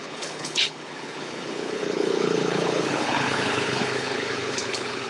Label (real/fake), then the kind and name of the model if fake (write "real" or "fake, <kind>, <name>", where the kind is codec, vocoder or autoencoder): fake, codec, HILCodec